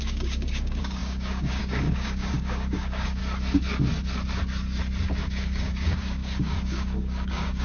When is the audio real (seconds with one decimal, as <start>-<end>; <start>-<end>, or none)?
3.2-5.2